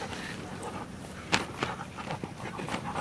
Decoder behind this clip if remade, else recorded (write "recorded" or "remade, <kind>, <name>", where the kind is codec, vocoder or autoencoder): recorded